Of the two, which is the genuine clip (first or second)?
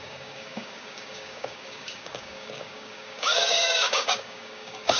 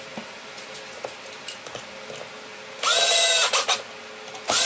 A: second